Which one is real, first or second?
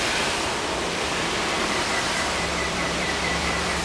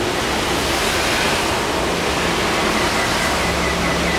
second